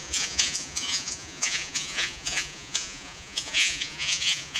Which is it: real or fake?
fake